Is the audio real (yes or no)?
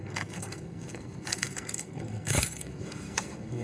no